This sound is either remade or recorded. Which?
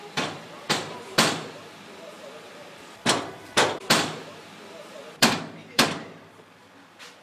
remade